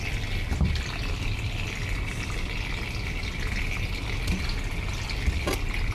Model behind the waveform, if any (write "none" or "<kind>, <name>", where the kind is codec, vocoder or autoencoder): none